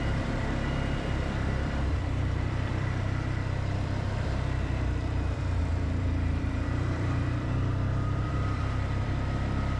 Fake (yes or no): yes